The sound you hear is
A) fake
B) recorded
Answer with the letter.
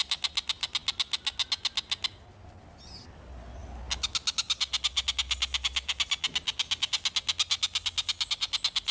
B